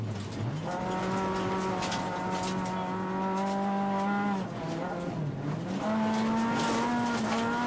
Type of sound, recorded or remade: recorded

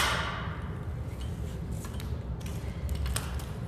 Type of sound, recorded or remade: recorded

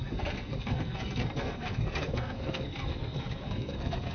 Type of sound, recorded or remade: remade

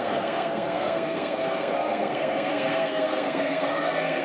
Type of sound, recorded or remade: remade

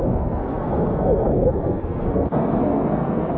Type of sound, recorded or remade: remade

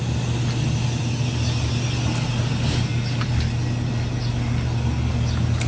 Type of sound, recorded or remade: recorded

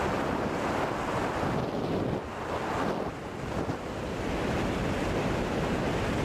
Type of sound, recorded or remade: recorded